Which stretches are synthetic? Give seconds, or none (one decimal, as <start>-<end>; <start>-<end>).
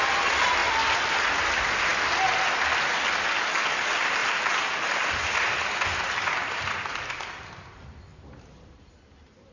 4.2-6.8; 8.1-8.9